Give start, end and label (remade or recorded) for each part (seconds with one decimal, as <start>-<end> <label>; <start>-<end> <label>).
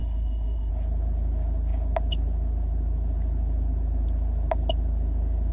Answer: 0.0-0.7 remade; 0.7-5.5 recorded